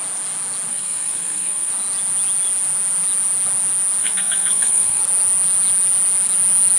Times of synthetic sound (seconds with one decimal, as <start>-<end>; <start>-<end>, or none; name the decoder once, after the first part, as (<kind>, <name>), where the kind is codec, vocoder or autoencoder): 0.7-1.7 (codec, SNAC); 4.0-5.0

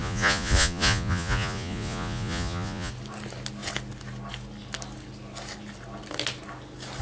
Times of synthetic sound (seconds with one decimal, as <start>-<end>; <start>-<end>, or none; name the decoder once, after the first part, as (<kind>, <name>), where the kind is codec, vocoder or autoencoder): 0.0-2.9 (vocoder, Vocos)

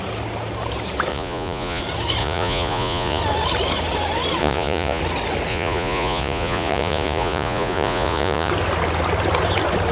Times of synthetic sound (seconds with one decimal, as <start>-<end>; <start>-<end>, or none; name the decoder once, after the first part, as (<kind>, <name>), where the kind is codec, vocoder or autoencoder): 1.1-1.8 (vocoder, Vocos); 2.2-3.2; 4.4-5.0; 5.5-8.5

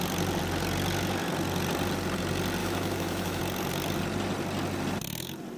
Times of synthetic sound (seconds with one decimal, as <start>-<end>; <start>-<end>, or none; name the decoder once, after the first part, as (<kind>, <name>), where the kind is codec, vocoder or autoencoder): 2.6-3.4 (autoencoder, DAC-VAE)